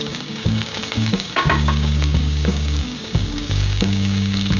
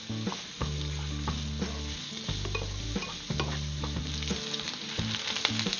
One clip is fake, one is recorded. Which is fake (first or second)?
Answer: first